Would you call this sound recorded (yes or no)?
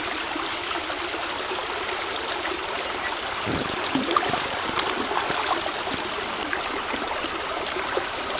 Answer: no